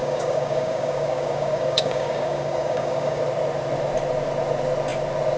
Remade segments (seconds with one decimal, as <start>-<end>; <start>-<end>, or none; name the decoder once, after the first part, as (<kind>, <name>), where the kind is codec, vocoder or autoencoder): 0.0-3.2 (codec, DAC)